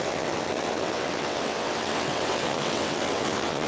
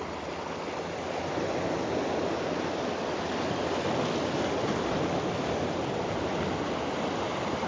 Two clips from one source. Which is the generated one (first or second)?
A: first